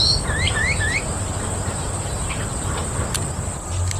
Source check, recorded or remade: recorded